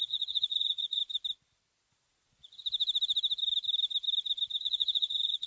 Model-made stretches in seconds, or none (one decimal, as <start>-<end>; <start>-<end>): 0.0-1.0; 1.9-2.4; 4.6-5.5